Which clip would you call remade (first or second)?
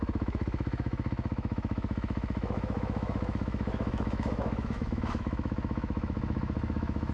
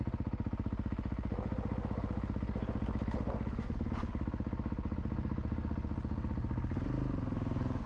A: first